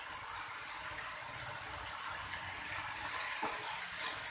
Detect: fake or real real